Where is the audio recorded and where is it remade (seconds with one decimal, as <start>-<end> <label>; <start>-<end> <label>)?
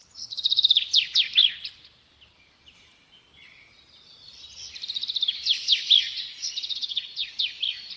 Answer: 0.0-6.0 recorded; 6.0-7.3 remade; 7.3-8.0 recorded